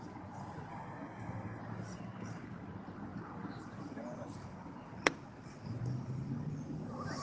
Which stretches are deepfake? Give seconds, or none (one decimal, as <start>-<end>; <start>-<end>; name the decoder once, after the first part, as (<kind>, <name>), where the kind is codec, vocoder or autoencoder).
0.7-1.6 (codec, SNAC)

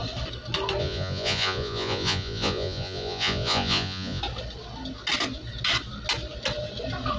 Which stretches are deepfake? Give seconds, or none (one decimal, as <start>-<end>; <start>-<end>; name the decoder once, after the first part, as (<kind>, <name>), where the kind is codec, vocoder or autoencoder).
0.8-4.2 (vocoder, Vocos)

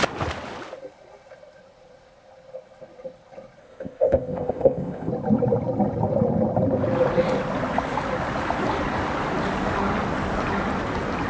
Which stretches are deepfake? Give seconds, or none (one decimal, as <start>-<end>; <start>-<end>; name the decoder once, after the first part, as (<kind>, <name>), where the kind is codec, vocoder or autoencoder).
3.6-5.1 (codec, ZipCodec)

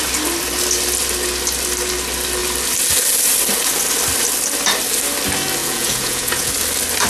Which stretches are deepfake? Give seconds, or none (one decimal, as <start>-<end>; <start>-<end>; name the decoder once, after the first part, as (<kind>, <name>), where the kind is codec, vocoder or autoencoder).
5.6-6.5 (vocoder, Vocos)

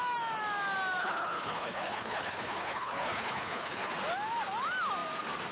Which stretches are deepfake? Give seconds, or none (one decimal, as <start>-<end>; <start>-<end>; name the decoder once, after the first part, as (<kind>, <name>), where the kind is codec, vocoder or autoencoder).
1.0-3.9 (codec, HILCodec)

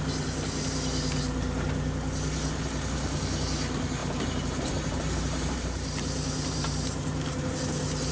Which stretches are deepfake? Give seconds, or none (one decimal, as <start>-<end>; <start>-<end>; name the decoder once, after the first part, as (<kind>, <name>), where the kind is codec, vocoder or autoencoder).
4.0-7.5 (vocoder, BigVGAN v2)

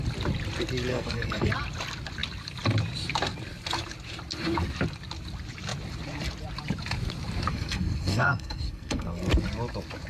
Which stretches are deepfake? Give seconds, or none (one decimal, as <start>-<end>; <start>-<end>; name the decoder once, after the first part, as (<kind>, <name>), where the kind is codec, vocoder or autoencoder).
0.9-1.5 (codec, SNAC); 7.5-9.3

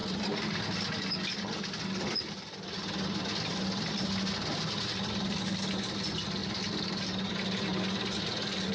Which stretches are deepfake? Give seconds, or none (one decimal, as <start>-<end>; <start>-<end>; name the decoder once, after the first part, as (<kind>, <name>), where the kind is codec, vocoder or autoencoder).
none